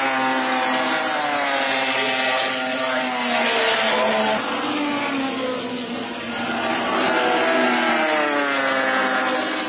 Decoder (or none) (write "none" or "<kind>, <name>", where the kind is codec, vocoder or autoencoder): none